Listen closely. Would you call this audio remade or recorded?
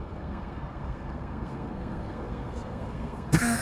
remade